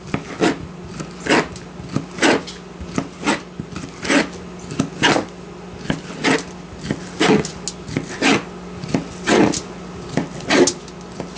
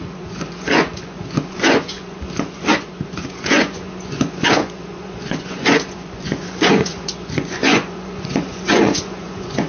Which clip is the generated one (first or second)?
second